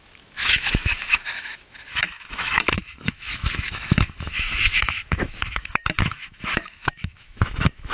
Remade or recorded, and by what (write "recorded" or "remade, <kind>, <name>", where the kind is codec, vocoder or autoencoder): remade, autoencoder, DAC-VAE